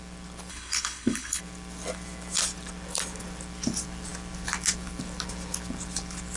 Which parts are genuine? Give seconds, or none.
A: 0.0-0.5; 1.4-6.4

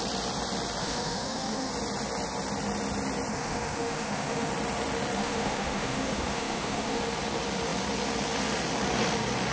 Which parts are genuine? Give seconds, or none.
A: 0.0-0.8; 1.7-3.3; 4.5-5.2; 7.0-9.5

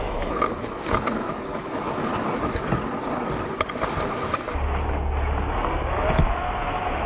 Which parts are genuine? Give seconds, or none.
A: 2.1-5.9

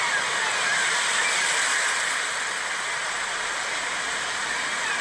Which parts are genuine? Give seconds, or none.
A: 0.0-5.0